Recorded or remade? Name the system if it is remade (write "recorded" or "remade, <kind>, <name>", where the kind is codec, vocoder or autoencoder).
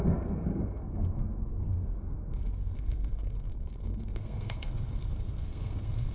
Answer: remade, codec, SNAC